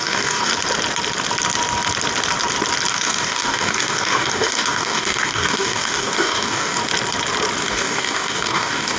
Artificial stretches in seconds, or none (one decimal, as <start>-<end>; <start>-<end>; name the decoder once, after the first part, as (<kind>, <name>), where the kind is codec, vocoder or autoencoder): 0.0-0.5 (codec, DAC); 2.9-6.8; 7.6-9.0

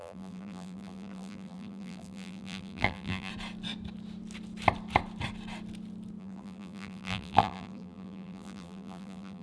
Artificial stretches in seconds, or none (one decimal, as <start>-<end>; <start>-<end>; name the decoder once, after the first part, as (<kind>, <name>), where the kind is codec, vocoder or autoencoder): 0.0-3.3 (vocoder, BigVGAN v2); 6.2-9.4

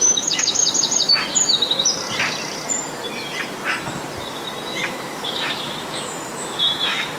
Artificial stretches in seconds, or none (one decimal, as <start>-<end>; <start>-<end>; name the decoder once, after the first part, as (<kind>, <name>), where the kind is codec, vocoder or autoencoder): 0.0-0.6 (autoencoder, DAC-VAE); 4.9-7.2

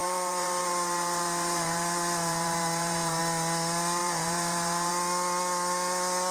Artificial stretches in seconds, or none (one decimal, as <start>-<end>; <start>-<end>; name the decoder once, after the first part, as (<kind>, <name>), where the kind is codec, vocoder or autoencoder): 0.0-3.2 (vocoder, BigVGAN v2); 4.0-4.9

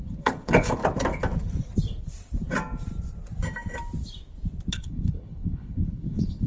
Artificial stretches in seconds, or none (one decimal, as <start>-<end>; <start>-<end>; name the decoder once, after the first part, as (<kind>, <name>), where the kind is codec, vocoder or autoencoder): 0.0-0.8 (codec, HILCodec); 4.7-6.5

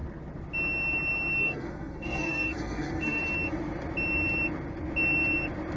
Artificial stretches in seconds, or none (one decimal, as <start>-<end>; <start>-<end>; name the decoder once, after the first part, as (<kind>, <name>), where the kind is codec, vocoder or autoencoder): 1.4-3.2 (codec, SNAC)

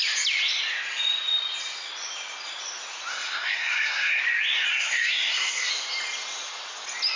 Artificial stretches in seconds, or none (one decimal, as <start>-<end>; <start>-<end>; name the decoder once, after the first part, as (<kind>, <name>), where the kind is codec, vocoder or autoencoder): 3.1-4.2 (codec, SNAC); 4.7-5.7

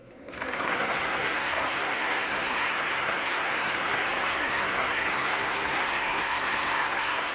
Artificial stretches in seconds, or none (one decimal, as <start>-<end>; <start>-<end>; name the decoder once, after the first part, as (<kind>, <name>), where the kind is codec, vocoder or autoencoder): 0.0-7.3 (codec, SNAC)